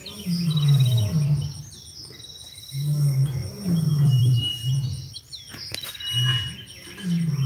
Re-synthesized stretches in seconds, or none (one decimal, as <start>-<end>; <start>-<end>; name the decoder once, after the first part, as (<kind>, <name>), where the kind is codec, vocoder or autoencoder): 3.4-4.7 (vocoder, BigVGAN v2)